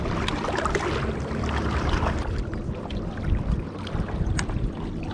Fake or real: real